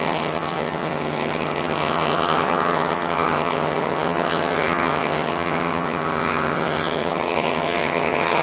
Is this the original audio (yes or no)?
no